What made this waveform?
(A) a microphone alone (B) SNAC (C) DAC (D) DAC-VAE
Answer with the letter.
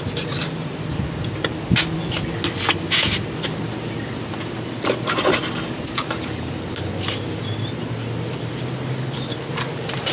A